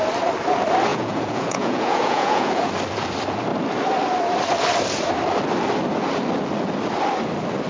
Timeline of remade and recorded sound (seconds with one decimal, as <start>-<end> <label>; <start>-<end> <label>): 0.0-0.9 recorded; 0.9-2.7 remade; 2.7-7.7 recorded